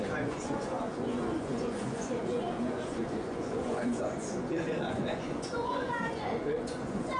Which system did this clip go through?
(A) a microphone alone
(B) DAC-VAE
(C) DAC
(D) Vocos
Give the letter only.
D